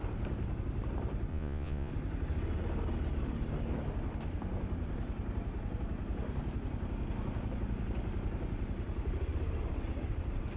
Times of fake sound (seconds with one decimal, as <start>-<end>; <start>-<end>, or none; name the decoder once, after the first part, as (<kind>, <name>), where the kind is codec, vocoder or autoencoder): 1.3-1.9 (vocoder, Vocos)